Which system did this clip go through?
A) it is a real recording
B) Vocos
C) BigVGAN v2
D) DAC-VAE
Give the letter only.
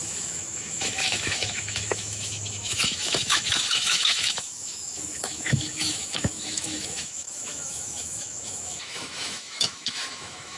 D